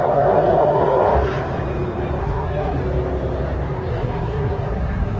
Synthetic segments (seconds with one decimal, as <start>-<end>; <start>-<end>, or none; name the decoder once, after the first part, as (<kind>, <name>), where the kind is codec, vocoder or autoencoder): 0.0-1.1 (codec, SNAC); 2.2-2.8; 3.9-5.2